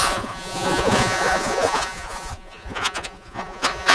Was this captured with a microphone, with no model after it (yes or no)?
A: no